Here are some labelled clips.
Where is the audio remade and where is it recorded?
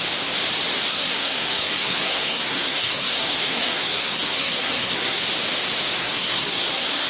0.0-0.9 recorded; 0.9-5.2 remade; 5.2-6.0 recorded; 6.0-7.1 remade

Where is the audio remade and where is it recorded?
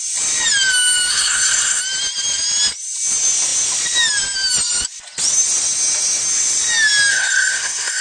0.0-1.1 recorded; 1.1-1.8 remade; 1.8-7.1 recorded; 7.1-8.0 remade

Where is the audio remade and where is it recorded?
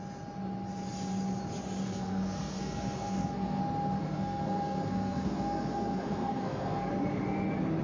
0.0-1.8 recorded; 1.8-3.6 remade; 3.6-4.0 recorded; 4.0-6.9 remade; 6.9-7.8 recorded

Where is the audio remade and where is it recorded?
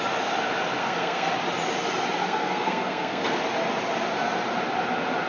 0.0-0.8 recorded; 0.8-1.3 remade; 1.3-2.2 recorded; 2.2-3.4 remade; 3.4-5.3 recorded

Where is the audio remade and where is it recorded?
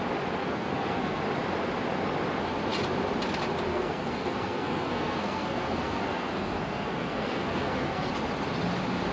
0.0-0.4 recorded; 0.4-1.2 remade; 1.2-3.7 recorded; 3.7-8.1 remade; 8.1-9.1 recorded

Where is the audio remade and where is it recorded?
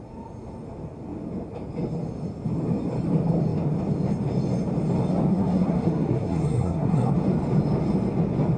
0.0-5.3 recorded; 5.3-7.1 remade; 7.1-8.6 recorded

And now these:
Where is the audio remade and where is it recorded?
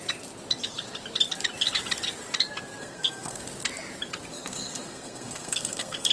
0.0-2.8 recorded; 2.8-3.4 remade; 3.4-4.3 recorded; 4.3-6.1 remade